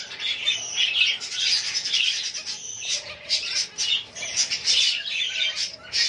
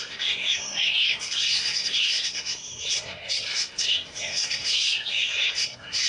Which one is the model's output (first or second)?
second